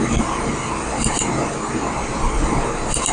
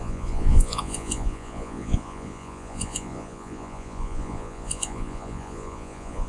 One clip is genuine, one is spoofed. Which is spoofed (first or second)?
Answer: second